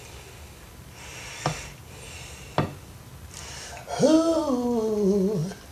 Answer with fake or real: real